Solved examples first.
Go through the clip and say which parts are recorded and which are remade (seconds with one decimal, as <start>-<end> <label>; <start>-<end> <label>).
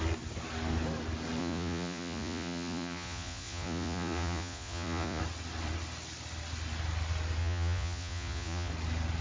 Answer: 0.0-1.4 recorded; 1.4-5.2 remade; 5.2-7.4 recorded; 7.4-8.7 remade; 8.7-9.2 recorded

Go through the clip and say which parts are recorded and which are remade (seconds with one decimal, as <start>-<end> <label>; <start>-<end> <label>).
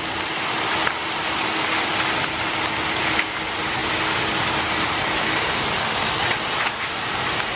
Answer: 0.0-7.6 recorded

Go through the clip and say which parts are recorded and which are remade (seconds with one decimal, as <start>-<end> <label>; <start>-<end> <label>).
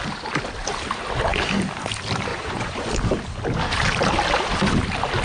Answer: 0.0-2.3 recorded; 2.3-2.9 remade; 2.9-5.2 recorded